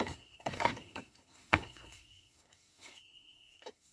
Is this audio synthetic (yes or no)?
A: yes